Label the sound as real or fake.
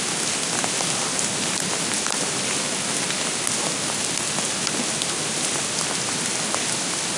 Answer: real